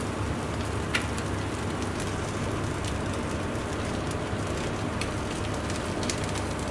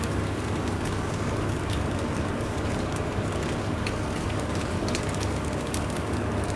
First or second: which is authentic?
first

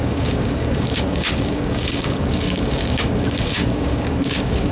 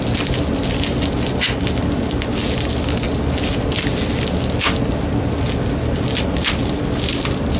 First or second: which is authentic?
second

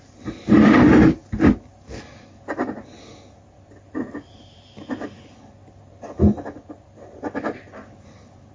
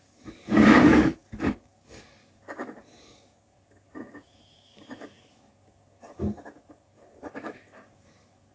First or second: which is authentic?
first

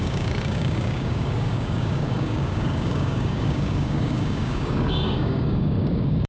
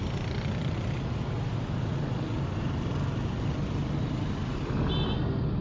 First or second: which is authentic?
second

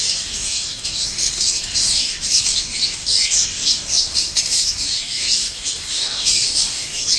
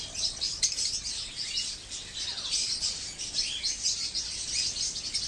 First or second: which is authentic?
second